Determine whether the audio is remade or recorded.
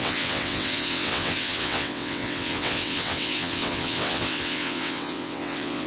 remade